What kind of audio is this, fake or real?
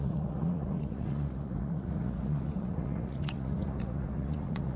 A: fake